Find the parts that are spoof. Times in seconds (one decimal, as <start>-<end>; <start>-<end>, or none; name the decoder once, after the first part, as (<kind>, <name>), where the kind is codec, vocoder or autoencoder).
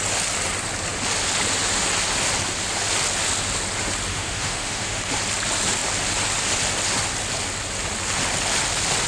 4.1-5.0 (autoencoder, DAC-VAE)